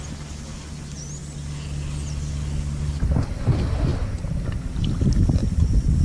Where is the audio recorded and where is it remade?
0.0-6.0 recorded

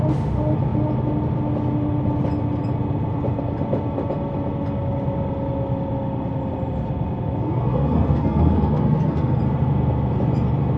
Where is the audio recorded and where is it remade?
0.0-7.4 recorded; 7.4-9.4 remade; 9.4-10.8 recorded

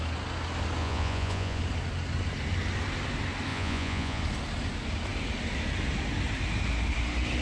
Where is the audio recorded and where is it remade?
0.0-0.8 recorded; 0.8-1.6 remade; 1.6-3.5 recorded; 3.5-4.2 remade; 4.2-7.4 recorded